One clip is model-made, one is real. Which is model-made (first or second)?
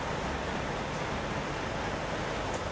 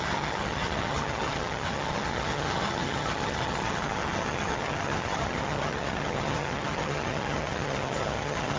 second